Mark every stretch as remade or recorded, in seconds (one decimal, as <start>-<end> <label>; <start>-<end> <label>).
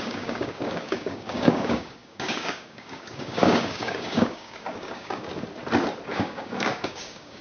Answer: 0.0-5.3 remade; 5.3-6.1 recorded; 6.1-7.4 remade